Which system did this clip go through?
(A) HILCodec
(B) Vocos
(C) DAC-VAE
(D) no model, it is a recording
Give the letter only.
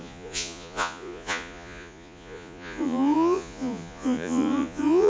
B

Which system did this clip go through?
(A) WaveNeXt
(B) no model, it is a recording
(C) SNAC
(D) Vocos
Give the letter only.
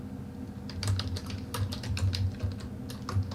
B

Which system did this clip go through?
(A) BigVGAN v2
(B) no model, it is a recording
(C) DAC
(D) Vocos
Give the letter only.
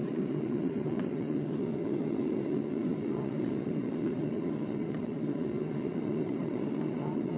D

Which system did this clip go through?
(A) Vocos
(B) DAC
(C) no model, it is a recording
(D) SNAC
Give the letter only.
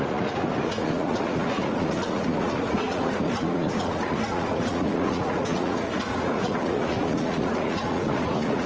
A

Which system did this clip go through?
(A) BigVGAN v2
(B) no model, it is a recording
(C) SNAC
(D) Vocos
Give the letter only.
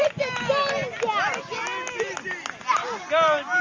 B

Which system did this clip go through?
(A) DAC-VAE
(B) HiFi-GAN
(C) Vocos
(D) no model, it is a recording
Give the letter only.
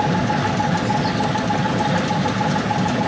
D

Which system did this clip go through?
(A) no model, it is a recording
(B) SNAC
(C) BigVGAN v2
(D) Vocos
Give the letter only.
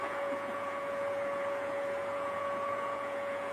D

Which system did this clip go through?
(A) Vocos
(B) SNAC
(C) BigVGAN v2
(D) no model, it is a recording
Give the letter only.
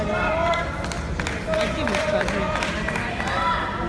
D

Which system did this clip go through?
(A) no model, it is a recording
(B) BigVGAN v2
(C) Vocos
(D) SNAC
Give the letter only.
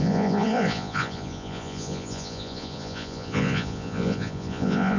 C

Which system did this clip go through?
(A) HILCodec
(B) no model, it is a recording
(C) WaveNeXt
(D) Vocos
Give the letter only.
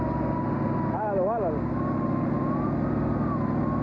B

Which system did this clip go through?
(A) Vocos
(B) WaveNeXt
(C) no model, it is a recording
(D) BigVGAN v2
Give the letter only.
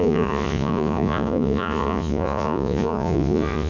A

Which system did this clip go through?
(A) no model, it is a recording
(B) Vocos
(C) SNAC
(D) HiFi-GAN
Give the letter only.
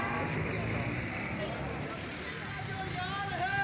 A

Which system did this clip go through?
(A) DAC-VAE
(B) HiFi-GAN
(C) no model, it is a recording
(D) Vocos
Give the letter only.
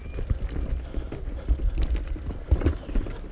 C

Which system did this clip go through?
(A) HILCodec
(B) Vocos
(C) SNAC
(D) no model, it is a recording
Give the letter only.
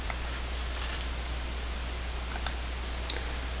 D